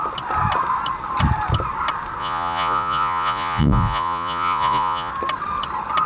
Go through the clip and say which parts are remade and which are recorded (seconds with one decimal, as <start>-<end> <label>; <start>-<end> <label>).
0.0-2.2 recorded; 2.2-5.1 remade; 5.1-6.1 recorded